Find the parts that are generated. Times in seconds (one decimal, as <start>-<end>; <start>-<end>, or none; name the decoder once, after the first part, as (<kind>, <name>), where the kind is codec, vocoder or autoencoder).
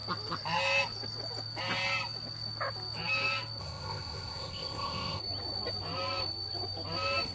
3.6-5.2 (codec, ZipCodec)